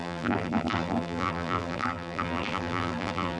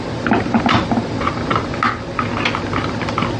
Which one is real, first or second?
second